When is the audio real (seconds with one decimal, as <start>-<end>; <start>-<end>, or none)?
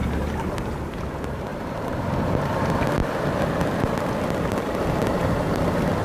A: 0.7-1.5; 2.6-6.0